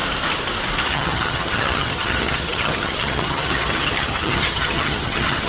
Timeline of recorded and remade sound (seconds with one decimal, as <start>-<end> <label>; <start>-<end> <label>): 0.0-0.9 recorded; 0.9-5.5 remade